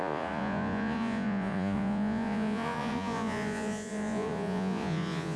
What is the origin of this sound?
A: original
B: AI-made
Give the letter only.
B